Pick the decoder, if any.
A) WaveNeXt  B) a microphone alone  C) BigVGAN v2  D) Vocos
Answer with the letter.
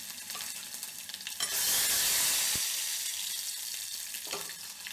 B